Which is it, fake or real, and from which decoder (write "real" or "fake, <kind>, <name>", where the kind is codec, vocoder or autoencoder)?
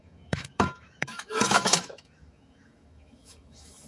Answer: fake, autoencoder, DAC-VAE